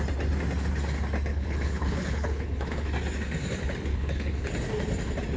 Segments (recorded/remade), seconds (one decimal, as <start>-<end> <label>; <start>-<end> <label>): 0.0-1.3 recorded; 1.3-2.9 remade; 2.9-3.9 recorded; 3.9-4.5 remade; 4.5-5.4 recorded